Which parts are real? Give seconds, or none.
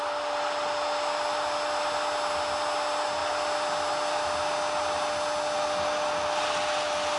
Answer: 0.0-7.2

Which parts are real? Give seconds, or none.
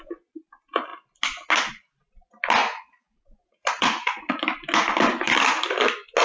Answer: 0.0-2.6; 4.4-6.2